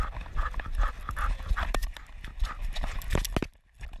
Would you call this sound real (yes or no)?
yes